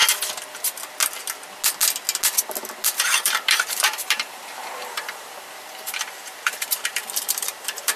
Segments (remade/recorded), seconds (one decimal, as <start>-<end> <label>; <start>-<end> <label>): 0.0-3.2 recorded; 3.2-8.0 remade